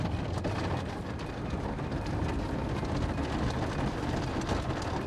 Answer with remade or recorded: recorded